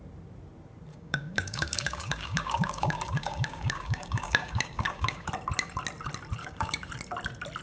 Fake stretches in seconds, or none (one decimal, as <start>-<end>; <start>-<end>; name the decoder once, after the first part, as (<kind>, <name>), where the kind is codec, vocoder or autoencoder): 0.9-5.3 (codec, DAC); 6.4-6.9